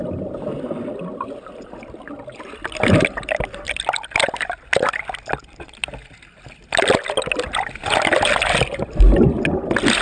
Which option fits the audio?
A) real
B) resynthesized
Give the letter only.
A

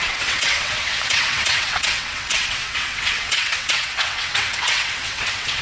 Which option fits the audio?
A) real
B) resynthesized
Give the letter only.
B